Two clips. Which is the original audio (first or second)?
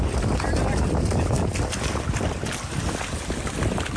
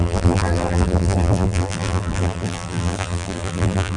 first